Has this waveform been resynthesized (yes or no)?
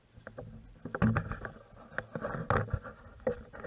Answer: no